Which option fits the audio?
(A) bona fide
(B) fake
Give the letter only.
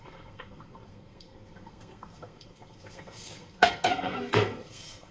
B